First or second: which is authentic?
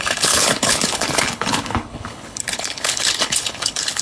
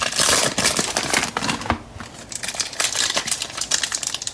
second